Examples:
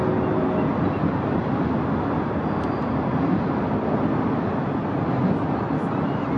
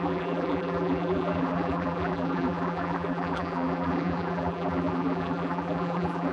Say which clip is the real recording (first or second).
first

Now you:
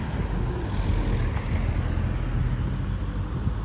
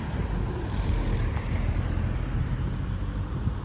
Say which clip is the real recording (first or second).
first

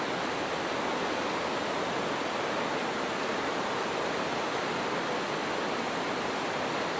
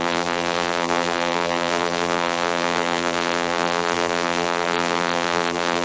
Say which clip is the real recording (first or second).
first